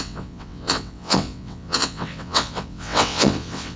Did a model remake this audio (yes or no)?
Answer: yes